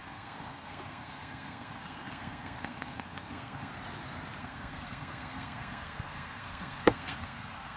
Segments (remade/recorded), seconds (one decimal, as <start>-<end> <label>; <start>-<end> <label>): 0.0-3.7 remade; 3.7-4.4 recorded; 4.4-7.8 remade